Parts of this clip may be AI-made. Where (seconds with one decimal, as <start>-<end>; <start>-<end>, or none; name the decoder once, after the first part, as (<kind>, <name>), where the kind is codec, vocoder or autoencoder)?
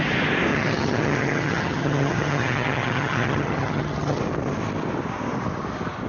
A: 0.5-4.2 (vocoder, HiFi-GAN)